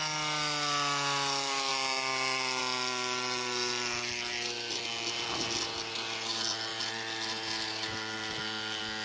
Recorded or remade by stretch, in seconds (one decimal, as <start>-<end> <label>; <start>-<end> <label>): 0.0-9.0 recorded